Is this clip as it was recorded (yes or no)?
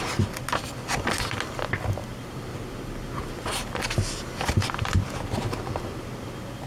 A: yes